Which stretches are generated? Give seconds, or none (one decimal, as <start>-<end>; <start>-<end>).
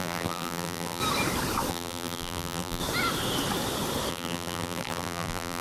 0.0-1.0; 1.7-2.8; 4.1-5.6